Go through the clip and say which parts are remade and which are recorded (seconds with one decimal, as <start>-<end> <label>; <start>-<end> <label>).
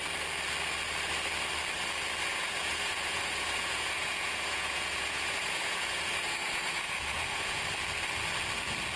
0.0-2.3 recorded; 2.3-7.6 remade; 7.6-9.0 recorded